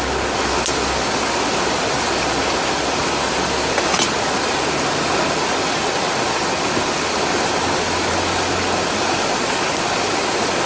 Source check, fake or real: real